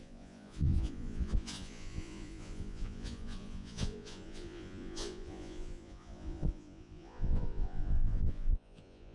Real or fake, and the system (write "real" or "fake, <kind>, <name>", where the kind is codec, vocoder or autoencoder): fake, vocoder, Vocos